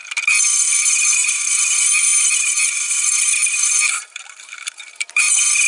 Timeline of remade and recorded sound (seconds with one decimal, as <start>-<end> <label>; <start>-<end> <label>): 0.0-0.8 recorded; 0.8-5.7 remade